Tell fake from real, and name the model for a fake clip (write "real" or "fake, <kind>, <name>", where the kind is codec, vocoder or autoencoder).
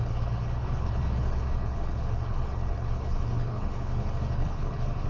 fake, codec, HILCodec